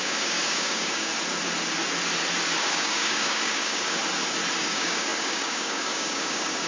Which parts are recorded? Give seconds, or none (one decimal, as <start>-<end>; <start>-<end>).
1.1-2.6; 4.0-4.6